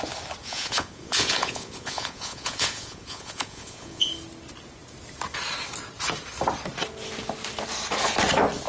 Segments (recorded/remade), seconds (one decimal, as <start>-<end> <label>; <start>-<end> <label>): 0.0-0.4 recorded; 0.4-4.1 remade; 4.1-8.7 recorded